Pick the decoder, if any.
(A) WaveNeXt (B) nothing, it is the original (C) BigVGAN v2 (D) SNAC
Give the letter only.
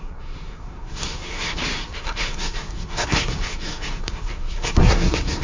D